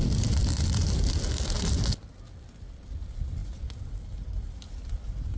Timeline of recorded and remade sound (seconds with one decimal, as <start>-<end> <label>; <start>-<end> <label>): 0.0-5.4 recorded

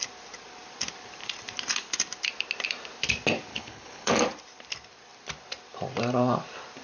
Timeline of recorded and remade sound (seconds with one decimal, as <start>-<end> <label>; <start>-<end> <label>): 0.0-3.5 recorded; 3.5-4.1 remade; 4.1-6.8 recorded

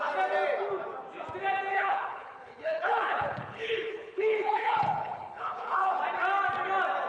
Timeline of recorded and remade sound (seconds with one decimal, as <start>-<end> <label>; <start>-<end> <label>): 0.0-1.7 recorded; 1.7-5.9 remade; 5.9-7.1 recorded